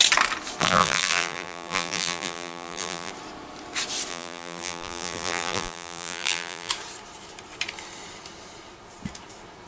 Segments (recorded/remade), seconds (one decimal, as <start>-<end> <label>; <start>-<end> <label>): 0.0-0.6 recorded; 0.6-3.1 remade; 3.1-4.1 recorded; 4.1-6.7 remade; 6.7-9.7 recorded